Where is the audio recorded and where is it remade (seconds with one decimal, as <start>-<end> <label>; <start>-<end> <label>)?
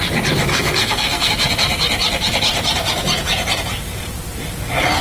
0.0-0.5 recorded; 0.5-1.3 remade; 1.3-5.0 recorded